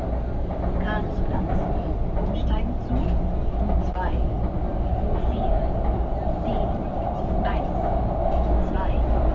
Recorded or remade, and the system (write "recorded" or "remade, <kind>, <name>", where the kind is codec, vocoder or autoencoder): recorded